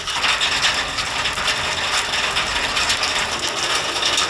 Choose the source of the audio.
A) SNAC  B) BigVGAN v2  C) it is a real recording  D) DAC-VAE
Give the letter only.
C